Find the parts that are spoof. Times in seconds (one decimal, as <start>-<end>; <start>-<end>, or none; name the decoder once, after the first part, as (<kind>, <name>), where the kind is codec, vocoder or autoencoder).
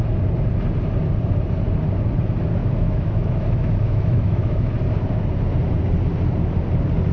2.6-4.7 (autoencoder, DAC-VAE)